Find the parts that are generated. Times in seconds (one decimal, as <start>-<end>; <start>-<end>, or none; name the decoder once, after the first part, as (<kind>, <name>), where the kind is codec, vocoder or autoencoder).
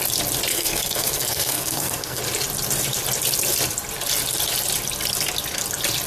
0.5-2.2 (codec, SNAC)